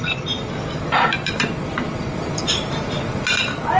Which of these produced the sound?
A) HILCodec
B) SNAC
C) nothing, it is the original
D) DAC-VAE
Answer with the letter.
C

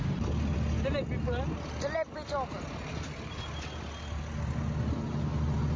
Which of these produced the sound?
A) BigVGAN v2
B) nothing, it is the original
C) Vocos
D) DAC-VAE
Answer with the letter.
B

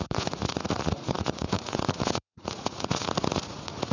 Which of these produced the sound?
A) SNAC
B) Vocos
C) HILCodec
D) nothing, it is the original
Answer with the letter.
B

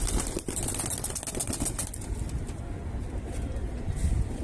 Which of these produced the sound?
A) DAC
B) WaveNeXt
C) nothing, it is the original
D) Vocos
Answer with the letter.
C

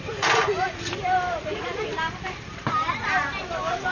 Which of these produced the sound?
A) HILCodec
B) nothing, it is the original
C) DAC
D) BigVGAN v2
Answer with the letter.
D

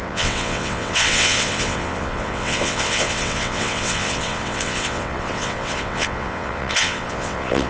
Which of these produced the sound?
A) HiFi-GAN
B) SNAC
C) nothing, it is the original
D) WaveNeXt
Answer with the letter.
D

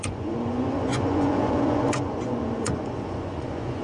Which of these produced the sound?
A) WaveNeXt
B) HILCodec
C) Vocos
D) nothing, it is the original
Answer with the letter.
C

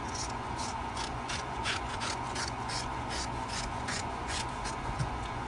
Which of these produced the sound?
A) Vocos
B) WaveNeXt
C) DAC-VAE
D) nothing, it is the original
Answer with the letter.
A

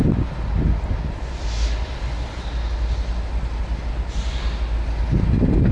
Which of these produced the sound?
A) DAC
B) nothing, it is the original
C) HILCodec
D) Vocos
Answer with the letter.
B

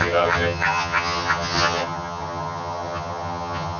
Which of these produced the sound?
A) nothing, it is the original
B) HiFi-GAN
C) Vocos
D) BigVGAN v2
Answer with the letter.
B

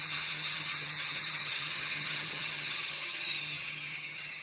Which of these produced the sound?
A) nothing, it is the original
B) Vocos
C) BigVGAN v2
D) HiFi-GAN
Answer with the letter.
D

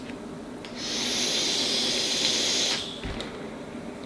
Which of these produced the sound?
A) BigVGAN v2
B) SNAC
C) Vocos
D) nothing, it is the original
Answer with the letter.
D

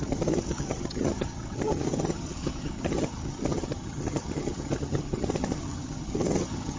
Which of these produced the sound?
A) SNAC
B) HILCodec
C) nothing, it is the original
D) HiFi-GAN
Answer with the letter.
D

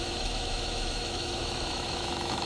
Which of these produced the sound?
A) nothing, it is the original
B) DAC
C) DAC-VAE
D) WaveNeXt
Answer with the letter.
C